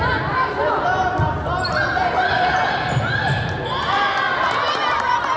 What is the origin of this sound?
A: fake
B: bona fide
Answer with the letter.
B